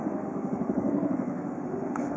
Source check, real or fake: fake